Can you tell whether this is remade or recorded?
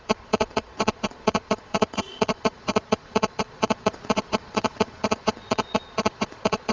remade